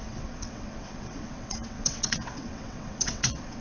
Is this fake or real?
fake